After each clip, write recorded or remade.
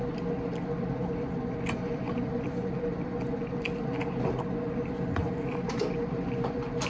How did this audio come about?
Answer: recorded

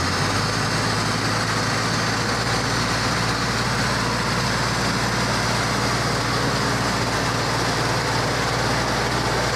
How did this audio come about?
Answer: recorded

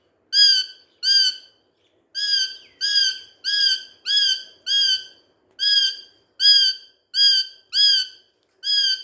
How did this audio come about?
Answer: recorded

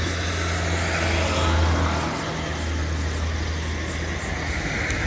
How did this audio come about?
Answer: recorded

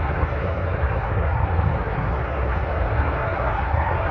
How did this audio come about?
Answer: remade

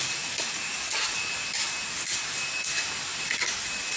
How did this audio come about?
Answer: recorded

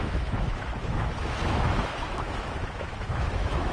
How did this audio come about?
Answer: remade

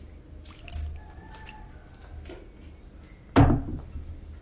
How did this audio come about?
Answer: recorded